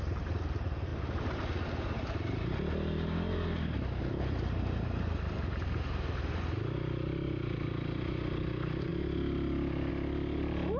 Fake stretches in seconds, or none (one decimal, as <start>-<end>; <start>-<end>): none